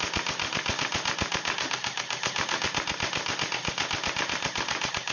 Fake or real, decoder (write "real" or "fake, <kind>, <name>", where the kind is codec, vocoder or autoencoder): real